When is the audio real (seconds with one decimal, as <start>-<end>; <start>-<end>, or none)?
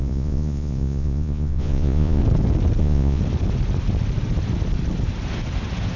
2.2-2.8; 3.2-6.0